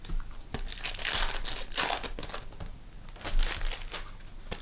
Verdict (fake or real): real